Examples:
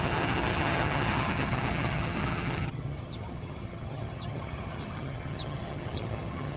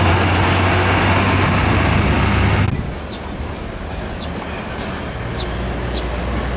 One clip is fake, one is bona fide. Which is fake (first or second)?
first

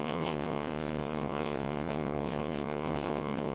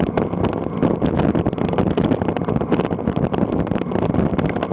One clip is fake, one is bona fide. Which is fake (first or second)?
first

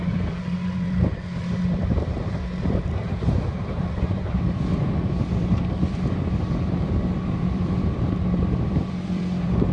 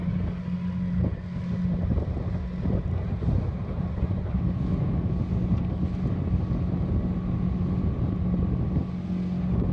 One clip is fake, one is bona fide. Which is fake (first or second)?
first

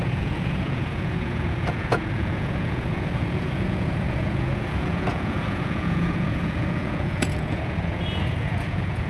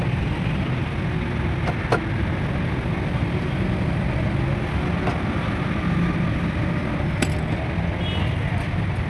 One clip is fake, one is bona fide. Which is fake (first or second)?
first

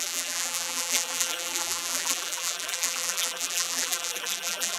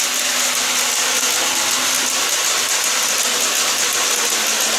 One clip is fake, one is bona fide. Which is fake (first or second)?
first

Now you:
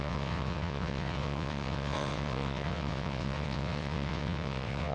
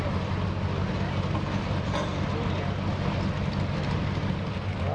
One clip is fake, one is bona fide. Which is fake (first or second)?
first